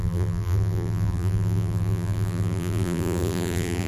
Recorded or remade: remade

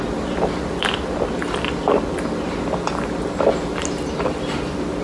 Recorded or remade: recorded